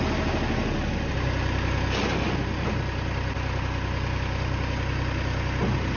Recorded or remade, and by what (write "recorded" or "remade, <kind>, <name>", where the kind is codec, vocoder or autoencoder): recorded